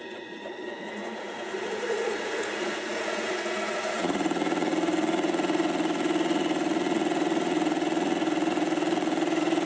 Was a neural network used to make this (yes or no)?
yes